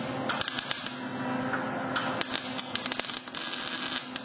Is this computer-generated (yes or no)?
no